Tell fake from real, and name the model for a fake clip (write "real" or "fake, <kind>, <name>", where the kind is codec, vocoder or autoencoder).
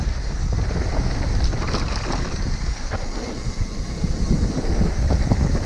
real